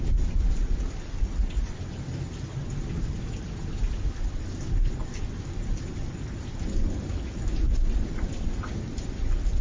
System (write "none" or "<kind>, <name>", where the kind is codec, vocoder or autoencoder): none